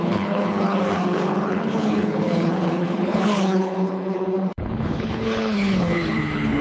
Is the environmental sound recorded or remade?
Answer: remade